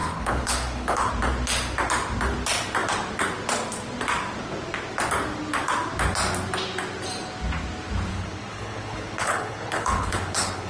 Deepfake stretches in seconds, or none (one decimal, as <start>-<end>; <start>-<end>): 0.0-1.1; 8.1-10.7